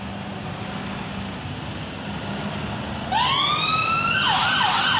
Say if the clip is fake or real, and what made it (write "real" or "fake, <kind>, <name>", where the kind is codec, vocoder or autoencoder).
real